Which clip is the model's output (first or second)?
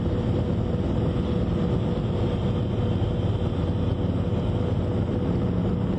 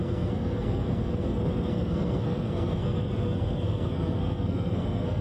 second